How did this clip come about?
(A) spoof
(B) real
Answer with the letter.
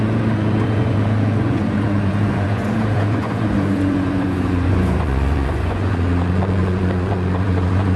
A